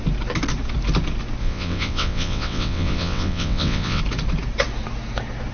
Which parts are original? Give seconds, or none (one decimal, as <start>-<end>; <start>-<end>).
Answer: 0.0-1.4; 4.0-5.5